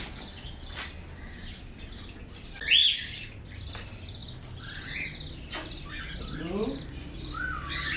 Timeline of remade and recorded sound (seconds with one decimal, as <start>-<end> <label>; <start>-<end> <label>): 0.0-8.0 recorded